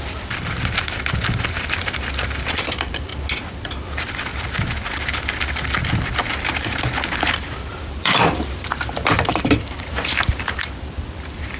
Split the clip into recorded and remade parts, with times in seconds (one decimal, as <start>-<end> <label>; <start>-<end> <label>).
0.0-3.1 remade; 3.1-3.6 recorded; 3.6-4.3 remade; 4.3-5.2 recorded; 5.2-11.6 remade